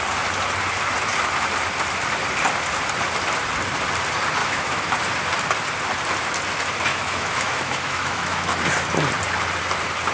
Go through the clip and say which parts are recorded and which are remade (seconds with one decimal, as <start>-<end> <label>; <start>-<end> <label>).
0.0-4.4 recorded; 4.4-4.9 remade; 4.9-6.9 recorded; 6.9-8.6 remade; 8.6-10.1 recorded